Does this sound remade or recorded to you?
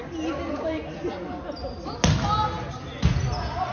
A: recorded